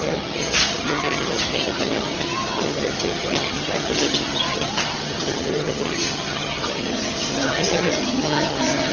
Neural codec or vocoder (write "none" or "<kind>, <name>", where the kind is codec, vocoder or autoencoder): vocoder, HiFi-GAN